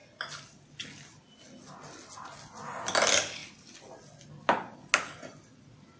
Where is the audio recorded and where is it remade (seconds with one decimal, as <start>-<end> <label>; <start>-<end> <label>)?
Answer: 0.0-6.0 recorded

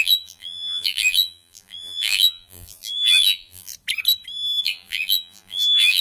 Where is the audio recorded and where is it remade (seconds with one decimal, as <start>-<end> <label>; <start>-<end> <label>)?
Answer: 0.0-3.7 remade; 3.7-4.6 recorded; 4.6-6.0 remade

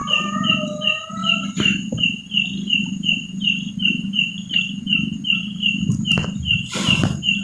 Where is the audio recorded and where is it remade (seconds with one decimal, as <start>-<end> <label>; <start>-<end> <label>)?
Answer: 0.0-1.2 recorded; 1.2-4.1 remade; 4.1-7.4 recorded

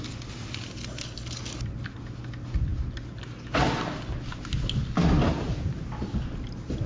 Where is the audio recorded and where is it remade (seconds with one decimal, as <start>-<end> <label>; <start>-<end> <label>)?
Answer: 0.0-6.9 recorded

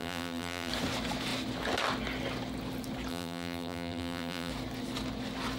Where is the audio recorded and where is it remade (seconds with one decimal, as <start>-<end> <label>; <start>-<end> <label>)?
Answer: 0.0-0.7 remade; 0.7-3.1 recorded; 3.1-4.5 remade; 4.5-5.6 recorded

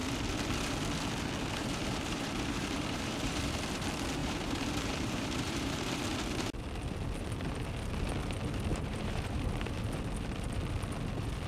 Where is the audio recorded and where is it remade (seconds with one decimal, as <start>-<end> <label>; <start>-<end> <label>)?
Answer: 0.0-1.6 recorded; 1.6-3.4 remade; 3.4-4.2 recorded; 4.2-6.0 remade; 6.0-8.7 recorded; 8.7-9.8 remade; 9.8-11.5 recorded

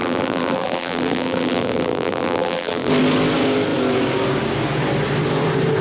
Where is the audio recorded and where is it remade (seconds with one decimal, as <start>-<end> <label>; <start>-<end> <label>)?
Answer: 0.0-2.9 remade; 2.9-5.8 recorded